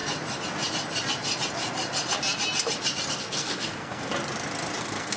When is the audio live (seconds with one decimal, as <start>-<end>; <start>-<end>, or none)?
0.0-3.1; 4.1-4.8